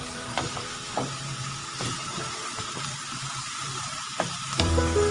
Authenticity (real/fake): fake